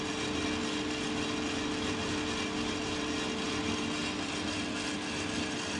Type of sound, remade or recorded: recorded